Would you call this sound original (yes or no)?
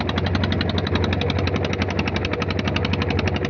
yes